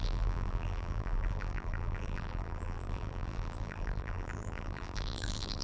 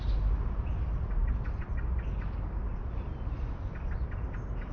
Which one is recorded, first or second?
second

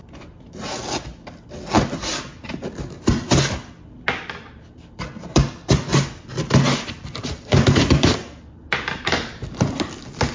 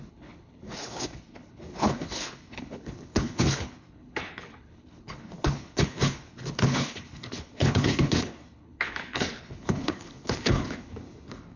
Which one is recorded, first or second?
first